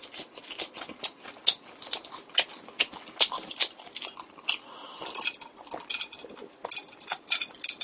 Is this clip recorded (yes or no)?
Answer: yes